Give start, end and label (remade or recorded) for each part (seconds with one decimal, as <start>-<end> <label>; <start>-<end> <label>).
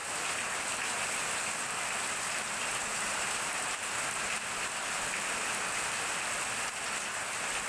0.0-7.7 recorded